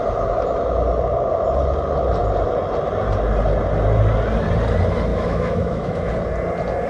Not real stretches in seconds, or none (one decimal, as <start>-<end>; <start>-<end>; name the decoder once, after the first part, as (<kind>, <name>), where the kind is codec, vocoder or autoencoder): 5.1-6.1 (autoencoder, DAC-VAE)